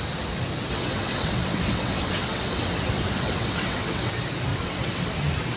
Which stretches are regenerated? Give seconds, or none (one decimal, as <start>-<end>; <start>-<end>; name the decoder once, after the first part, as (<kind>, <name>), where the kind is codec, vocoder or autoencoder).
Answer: 0.7-4.1 (vocoder, WaveNeXt); 4.5-5.1